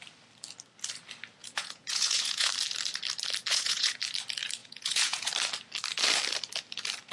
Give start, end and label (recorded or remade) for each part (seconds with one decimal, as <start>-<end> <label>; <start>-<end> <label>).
0.0-1.4 recorded; 1.4-2.5 remade; 2.5-3.5 recorded; 3.5-4.0 remade; 4.0-4.6 recorded; 4.6-5.3 remade; 5.3-7.1 recorded